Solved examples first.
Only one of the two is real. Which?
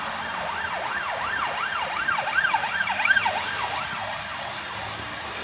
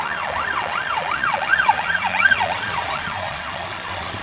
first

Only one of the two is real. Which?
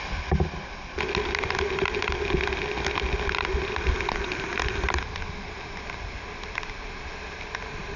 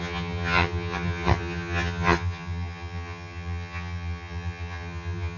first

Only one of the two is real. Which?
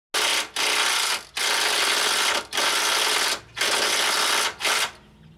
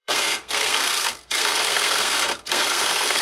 first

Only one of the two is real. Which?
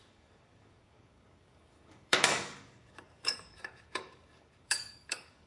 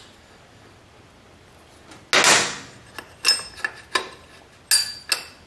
second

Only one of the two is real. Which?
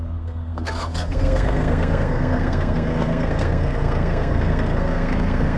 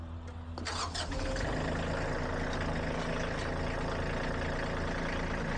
second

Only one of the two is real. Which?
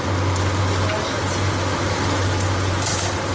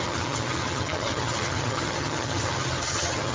first